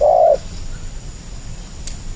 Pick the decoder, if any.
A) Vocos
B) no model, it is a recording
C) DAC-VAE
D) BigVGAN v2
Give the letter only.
B